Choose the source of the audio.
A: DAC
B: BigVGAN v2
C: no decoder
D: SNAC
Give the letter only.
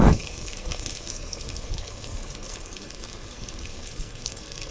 D